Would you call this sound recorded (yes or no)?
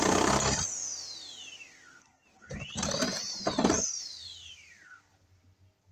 yes